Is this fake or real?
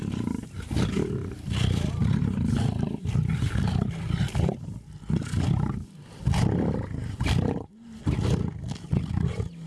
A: real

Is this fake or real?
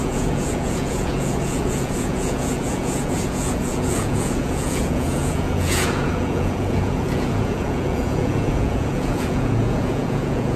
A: fake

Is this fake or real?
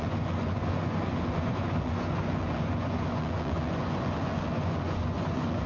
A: fake